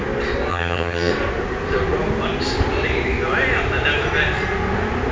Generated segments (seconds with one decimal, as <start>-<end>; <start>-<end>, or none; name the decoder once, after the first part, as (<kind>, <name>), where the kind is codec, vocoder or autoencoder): 0.5-1.1 (vocoder, HiFi-GAN)